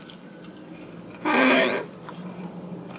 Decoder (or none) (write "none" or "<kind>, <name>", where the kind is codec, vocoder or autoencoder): none